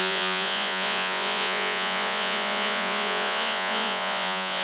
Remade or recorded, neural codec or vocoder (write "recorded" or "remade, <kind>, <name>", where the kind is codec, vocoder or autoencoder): remade, vocoder, Vocos